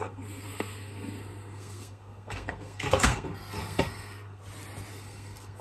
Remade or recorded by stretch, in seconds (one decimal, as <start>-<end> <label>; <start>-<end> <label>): 0.0-4.4 remade; 4.4-4.9 recorded; 4.9-5.6 remade